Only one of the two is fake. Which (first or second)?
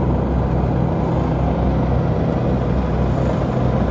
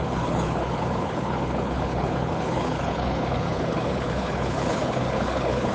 second